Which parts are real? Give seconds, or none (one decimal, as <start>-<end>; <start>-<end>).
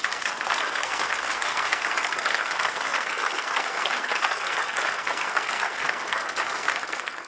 none